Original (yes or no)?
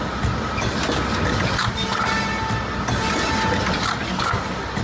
yes